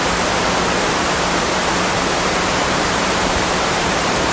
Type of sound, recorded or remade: remade